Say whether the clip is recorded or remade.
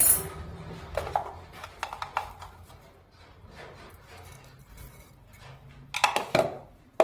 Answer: recorded